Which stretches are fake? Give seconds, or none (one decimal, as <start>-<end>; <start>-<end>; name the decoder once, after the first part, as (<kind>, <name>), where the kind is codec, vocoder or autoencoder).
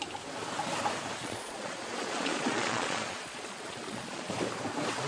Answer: 1.2-4.3 (vocoder, Vocos)